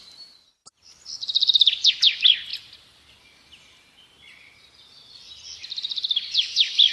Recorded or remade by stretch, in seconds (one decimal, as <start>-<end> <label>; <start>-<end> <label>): 0.0-6.9 recorded